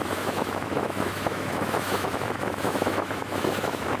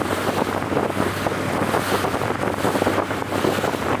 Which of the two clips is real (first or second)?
second